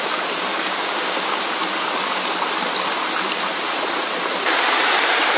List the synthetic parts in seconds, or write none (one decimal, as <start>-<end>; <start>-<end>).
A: 0.5-1.4